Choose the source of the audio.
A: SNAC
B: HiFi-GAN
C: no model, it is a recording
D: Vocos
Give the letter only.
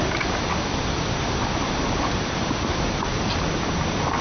C